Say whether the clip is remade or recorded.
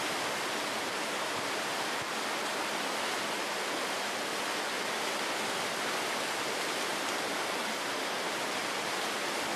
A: recorded